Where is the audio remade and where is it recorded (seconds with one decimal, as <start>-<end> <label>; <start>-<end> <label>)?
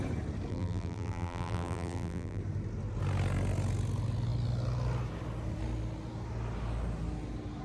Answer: 0.0-0.5 recorded; 0.5-2.4 remade; 2.4-7.6 recorded